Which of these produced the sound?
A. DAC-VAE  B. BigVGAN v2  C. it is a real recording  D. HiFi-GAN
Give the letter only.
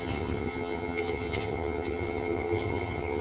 D